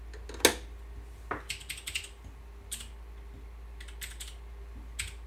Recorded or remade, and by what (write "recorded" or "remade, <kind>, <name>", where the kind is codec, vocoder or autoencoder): recorded